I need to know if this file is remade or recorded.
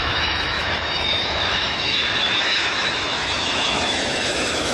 remade